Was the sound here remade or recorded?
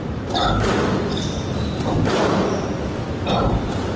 recorded